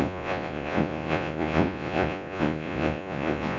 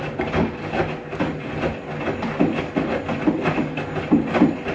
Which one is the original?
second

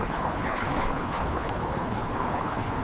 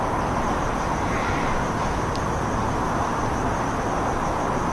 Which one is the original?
second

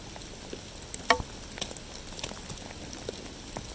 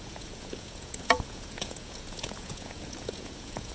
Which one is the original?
first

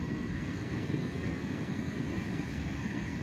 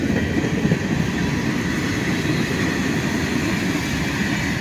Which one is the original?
second